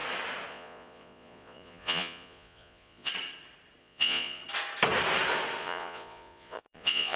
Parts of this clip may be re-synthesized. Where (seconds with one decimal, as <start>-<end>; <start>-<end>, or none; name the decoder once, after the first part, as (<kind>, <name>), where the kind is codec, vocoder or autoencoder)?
0.5-3.1 (vocoder, Vocos); 3.8-4.4; 5.6-7.2